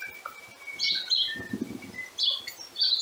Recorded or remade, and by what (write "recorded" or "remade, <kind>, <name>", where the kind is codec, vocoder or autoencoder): recorded